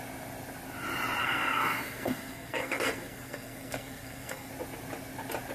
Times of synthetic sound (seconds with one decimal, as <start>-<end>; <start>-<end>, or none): 1.2-4.5

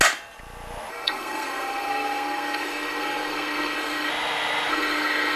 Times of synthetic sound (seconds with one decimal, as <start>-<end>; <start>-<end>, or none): 0.9-4.1; 4.7-5.4

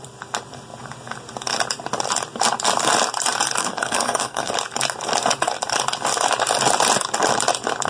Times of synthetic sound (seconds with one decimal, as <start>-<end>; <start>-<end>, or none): 3.6-4.5